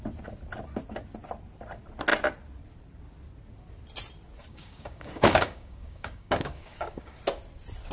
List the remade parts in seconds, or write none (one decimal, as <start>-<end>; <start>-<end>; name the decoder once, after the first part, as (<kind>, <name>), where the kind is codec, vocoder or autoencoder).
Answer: 4.5-7.2 (codec, DAC)